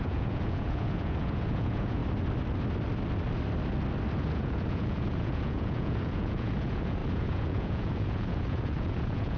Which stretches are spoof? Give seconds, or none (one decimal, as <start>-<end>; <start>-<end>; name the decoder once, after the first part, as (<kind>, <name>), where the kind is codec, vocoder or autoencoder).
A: 0.0-2.0 (vocoder, Vocos); 4.2-9.4